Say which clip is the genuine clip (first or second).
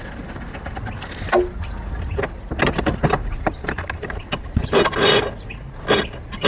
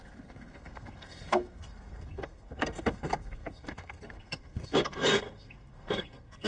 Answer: first